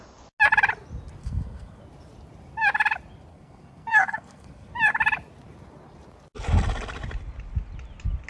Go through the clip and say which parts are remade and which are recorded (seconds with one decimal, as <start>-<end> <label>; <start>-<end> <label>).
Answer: 0.0-1.2 recorded; 1.2-1.8 remade; 1.8-3.3 recorded; 3.3-4.7 remade; 4.7-8.3 recorded